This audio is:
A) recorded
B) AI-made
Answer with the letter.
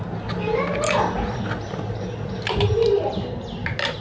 A